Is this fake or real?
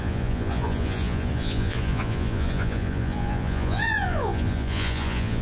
fake